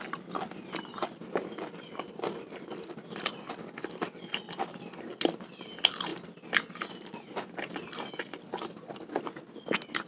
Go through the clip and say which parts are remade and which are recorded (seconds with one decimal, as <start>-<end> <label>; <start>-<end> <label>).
0.0-10.1 recorded